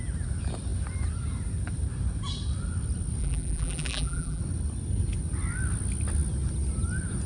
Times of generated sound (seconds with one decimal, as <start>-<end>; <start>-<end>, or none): 3.2-4.4